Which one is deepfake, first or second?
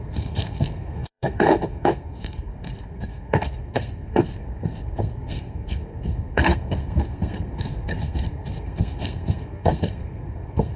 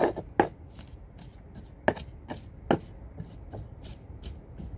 first